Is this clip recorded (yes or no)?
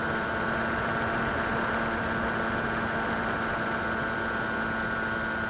yes